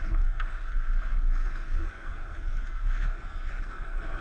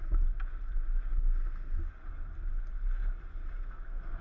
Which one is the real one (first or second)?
second